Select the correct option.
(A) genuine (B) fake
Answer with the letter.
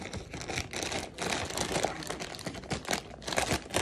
A